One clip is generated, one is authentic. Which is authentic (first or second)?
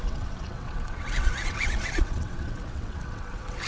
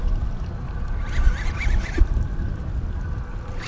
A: second